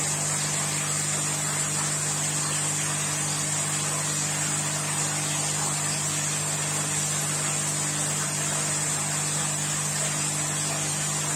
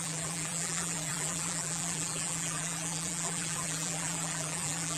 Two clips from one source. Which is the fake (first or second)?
second